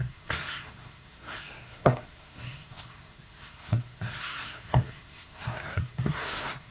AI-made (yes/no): yes